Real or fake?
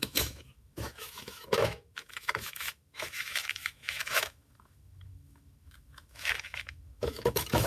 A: fake